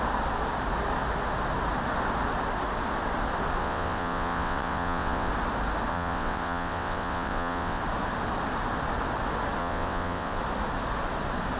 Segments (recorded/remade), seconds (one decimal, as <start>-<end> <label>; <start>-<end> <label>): 0.0-3.6 recorded; 3.6-5.3 remade; 5.3-5.9 recorded; 5.9-7.8 remade; 7.8-9.6 recorded; 9.6-10.4 remade; 10.4-11.6 recorded